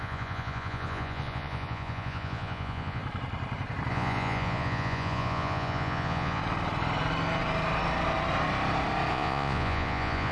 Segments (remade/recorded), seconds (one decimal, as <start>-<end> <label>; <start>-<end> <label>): 0.0-3.0 remade; 3.0-3.9 recorded; 3.9-6.4 remade; 6.4-9.1 recorded; 9.1-10.3 remade

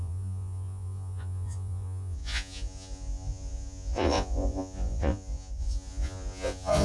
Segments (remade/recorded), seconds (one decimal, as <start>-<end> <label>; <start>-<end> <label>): 0.0-6.8 remade